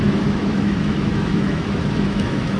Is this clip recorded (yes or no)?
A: no